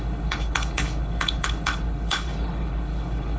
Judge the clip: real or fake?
fake